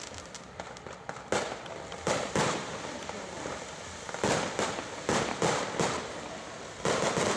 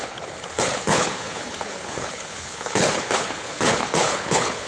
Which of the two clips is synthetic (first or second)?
second